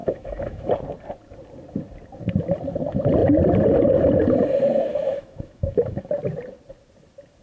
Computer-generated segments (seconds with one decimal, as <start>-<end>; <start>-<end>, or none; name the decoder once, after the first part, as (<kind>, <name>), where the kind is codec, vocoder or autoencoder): 0.0-0.7 (autoencoder, DAC-VAE); 4.9-6.1